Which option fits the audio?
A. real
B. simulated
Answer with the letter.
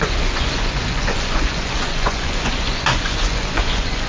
B